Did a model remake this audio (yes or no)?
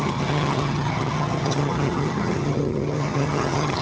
yes